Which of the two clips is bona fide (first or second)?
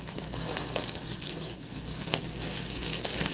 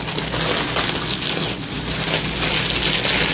second